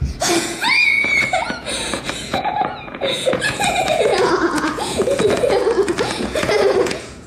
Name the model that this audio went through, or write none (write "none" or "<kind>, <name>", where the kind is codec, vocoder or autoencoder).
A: vocoder, Vocos